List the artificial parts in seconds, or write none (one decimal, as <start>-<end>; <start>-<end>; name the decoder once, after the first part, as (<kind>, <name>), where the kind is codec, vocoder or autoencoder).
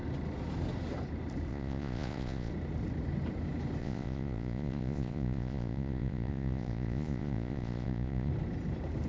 1.5-2.5 (vocoder, Vocos); 3.8-8.3